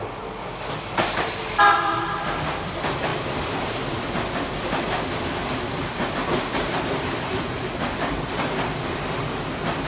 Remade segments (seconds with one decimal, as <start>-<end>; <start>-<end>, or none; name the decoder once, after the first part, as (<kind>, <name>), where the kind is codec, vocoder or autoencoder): 0.0-9.9 (vocoder, BigVGAN v2)